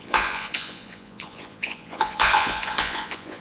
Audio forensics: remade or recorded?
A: remade